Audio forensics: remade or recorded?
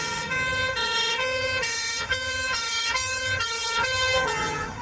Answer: remade